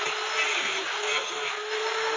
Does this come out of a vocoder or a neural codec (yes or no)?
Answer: no